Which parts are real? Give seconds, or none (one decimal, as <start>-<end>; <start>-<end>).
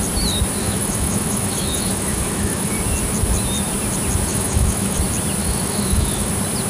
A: 0.0-0.6; 2.7-4.3; 5.0-5.4; 6.3-6.7